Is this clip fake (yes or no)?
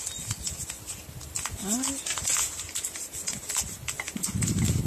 no